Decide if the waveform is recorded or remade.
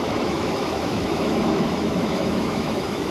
remade